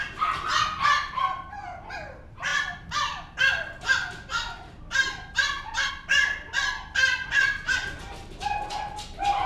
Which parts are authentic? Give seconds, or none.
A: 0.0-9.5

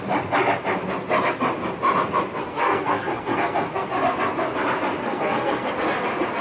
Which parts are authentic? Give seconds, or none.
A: 0.0-2.4; 3.9-5.0; 5.7-6.4

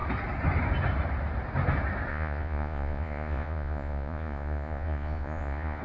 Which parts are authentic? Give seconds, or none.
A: 0.0-2.1

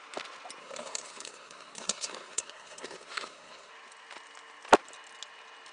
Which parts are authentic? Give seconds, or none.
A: 0.0-0.6; 3.7-5.7

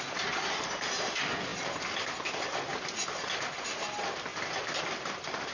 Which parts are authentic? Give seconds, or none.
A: 0.0-5.5